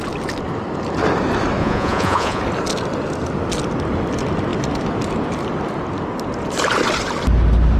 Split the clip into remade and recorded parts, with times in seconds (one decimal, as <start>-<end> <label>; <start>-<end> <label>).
0.0-1.6 recorded; 1.6-2.4 remade; 2.4-7.8 recorded